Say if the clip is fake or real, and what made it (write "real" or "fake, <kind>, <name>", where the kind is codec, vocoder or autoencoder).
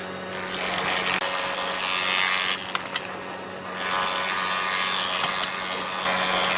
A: real